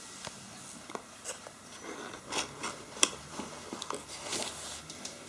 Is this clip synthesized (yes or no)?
no